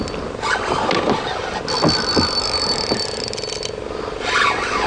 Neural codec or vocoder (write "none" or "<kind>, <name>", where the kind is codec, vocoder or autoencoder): none